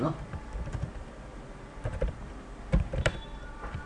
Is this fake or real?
fake